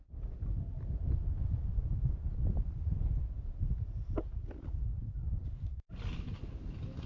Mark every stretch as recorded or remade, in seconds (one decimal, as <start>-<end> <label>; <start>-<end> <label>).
0.0-4.9 recorded; 4.9-6.0 remade; 6.0-7.1 recorded